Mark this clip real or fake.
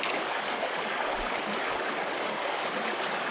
fake